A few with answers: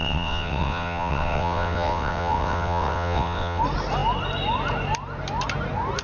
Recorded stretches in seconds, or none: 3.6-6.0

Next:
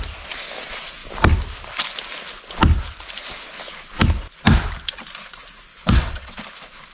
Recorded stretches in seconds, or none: 0.0-5.7; 6.4-6.9

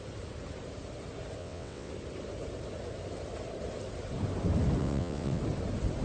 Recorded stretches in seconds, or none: 0.0-1.4; 1.9-4.8; 5.4-6.0